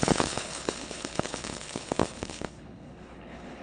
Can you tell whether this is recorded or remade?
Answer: remade